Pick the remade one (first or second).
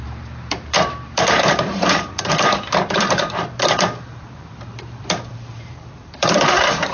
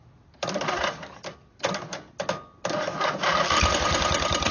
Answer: first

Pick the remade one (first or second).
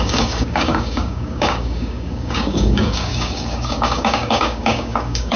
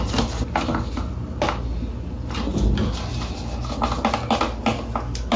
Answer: first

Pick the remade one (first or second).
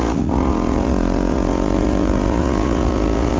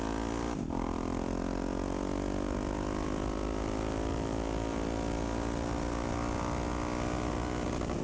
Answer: first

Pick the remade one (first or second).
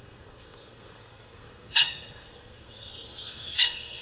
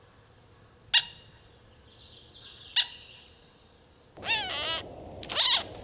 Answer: first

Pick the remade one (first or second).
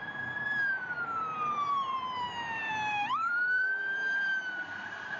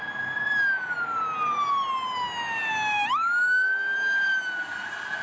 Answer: first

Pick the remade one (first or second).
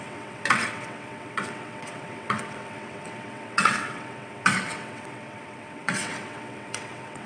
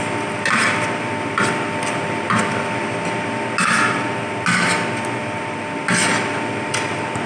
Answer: first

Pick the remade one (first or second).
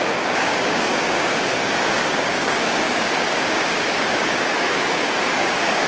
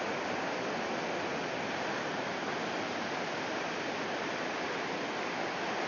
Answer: first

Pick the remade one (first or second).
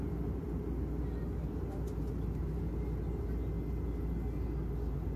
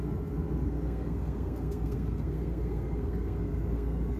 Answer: second